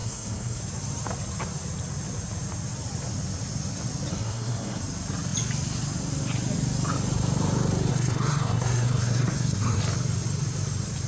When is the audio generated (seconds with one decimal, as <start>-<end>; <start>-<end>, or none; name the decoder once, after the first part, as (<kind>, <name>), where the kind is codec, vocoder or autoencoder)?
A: 0.0-0.6 (codec, SNAC); 4.1-4.8; 7.9-9.8